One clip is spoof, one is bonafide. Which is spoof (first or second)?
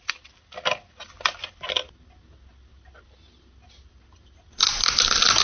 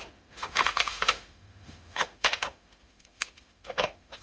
second